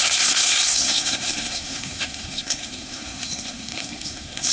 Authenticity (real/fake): fake